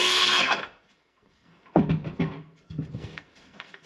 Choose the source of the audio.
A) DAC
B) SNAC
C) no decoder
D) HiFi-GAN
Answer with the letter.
B